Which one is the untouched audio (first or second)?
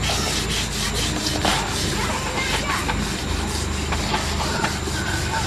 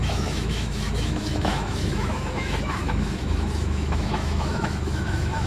first